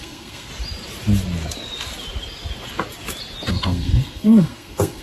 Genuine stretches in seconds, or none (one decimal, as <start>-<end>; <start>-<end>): 0.5-3.5